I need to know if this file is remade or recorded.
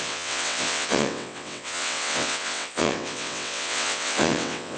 remade